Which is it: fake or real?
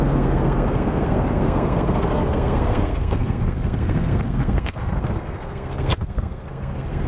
fake